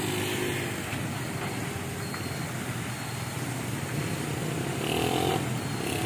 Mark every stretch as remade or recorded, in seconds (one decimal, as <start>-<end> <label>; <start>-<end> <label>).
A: 0.0-6.1 recorded